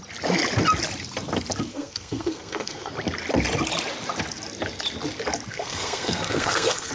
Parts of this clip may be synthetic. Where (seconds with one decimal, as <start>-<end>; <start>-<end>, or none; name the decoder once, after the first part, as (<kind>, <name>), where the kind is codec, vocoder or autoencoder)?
1.7-2.9 (codec, SNAC); 5.5-6.9